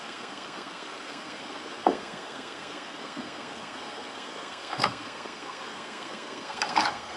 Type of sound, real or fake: fake